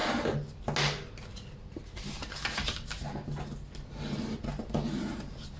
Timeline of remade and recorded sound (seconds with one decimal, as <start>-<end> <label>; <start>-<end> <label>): 0.0-5.6 recorded